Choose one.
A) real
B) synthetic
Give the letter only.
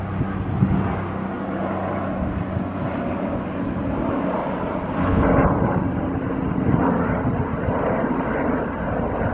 A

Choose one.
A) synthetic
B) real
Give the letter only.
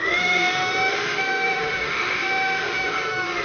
A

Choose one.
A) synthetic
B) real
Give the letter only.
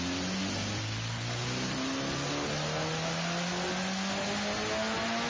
B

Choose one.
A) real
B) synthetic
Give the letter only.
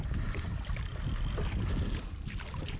A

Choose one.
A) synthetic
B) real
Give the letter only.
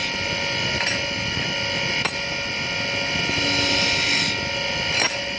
B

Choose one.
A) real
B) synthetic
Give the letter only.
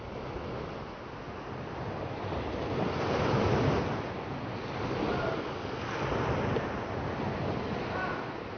A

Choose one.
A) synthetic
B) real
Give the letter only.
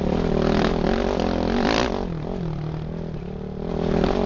B